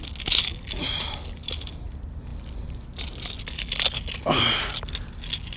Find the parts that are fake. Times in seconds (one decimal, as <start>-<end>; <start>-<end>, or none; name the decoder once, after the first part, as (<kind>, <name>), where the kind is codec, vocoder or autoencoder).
none